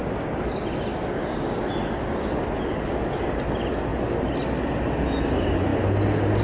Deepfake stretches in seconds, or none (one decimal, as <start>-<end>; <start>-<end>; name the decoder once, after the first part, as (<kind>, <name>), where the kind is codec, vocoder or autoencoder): 0.9-1.6 (codec, DAC)

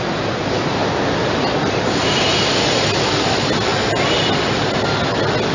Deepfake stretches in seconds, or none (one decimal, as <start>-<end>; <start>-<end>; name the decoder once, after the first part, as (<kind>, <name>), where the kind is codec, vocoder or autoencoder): none

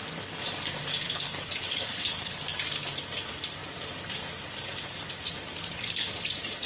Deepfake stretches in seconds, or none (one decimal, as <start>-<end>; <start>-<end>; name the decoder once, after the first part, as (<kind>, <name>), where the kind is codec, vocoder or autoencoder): 0.0-2.6 (codec, DAC); 5.5-6.7